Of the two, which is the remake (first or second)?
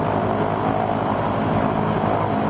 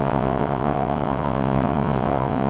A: second